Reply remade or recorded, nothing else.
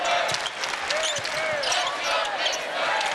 recorded